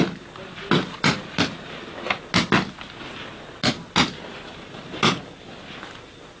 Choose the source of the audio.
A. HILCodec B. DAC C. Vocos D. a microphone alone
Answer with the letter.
D